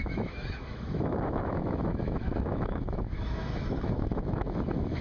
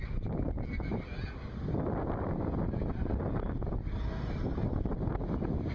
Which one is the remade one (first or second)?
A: first